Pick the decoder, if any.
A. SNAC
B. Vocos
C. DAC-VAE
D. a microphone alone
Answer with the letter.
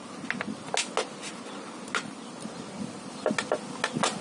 D